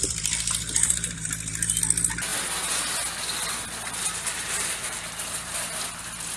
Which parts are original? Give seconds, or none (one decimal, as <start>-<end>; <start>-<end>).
1.8-4.0; 5.7-6.4